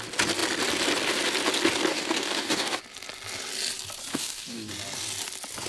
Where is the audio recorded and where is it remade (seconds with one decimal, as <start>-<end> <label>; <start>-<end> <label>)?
0.0-1.9 recorded; 1.9-2.8 remade; 2.8-4.1 recorded; 4.1-4.7 remade; 4.7-5.7 recorded